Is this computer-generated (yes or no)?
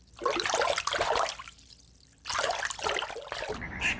no